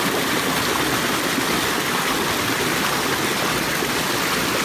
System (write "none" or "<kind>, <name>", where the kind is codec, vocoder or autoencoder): none